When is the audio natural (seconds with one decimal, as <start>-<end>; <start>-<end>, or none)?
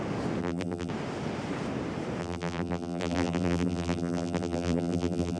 0.0-0.4; 0.9-2.2